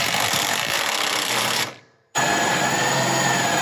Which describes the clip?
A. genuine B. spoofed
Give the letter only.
B